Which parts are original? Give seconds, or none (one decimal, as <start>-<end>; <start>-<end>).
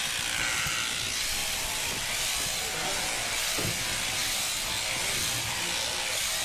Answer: 0.0-1.4; 2.1-4.2; 5.0-6.4